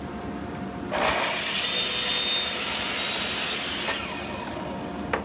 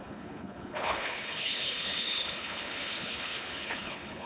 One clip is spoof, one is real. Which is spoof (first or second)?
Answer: second